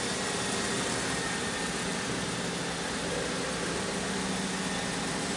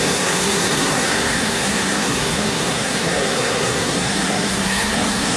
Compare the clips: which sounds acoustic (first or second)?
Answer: first